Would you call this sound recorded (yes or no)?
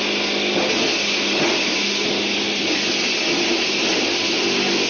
yes